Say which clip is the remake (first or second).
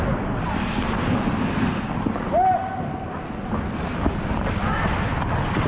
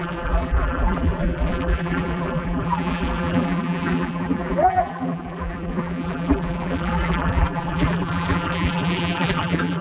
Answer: second